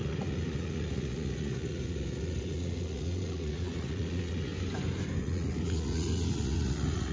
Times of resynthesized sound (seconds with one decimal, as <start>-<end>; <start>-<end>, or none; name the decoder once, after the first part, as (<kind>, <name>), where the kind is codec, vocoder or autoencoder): 0.0-4.5 (vocoder, Vocos); 5.2-7.1